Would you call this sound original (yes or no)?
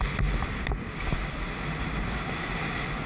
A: yes